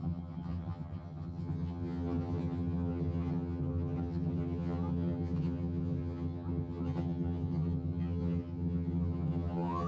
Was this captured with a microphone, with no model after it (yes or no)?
no